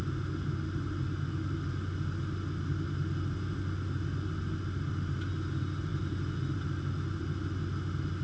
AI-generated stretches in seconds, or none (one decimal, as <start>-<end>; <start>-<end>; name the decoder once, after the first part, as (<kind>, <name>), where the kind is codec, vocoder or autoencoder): none